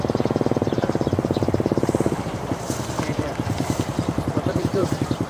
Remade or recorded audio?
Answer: remade